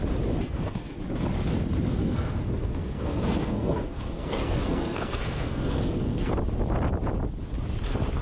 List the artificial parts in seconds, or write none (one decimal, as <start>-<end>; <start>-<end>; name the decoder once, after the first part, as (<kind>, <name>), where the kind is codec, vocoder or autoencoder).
0.4-1.0 (codec, SNAC); 1.9-6.3